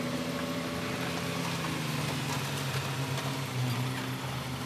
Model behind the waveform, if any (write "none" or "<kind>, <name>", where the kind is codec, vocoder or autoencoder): none